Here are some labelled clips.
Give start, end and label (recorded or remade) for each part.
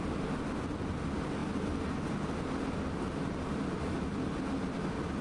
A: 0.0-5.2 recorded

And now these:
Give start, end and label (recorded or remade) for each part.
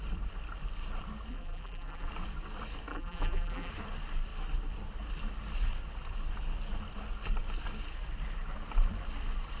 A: 0.0-1.3 recorded; 1.3-2.1 remade; 2.1-2.9 recorded; 2.9-3.7 remade; 3.7-9.6 recorded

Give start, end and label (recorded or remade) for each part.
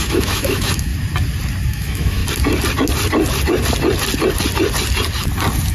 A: 0.0-0.9 remade; 0.9-1.7 recorded; 1.7-2.2 remade; 2.2-5.7 recorded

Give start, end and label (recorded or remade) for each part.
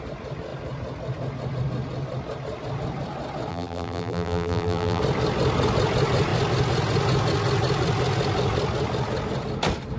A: 0.0-3.5 recorded; 3.5-5.0 remade; 5.0-10.0 recorded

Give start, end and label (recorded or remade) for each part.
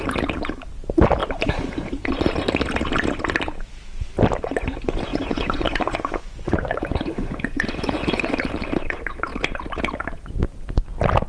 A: 0.0-5.1 recorded; 5.1-8.3 remade; 8.3-11.3 recorded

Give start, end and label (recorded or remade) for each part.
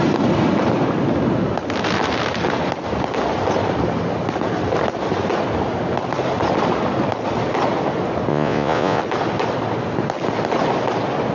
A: 0.0-8.3 recorded; 8.3-9.0 remade; 9.0-11.3 recorded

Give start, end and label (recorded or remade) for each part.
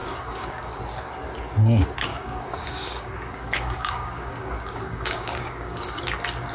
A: 0.0-0.8 remade; 0.8-2.1 recorded; 2.1-6.0 remade; 6.0-6.5 recorded